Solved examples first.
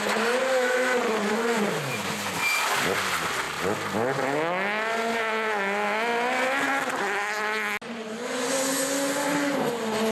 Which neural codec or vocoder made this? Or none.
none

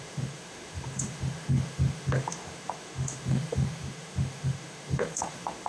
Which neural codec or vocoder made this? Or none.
autoencoder, DAC-VAE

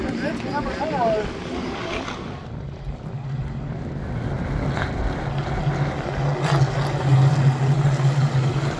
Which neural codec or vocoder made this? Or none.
none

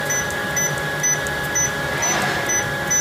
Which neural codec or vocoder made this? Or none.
none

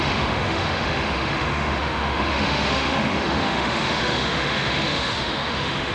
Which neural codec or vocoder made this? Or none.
autoencoder, DAC-VAE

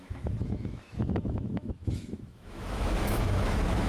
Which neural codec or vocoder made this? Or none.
autoencoder, DAC-VAE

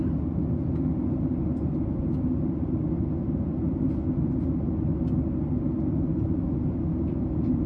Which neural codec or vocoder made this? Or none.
none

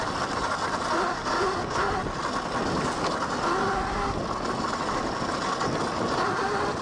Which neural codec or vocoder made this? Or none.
none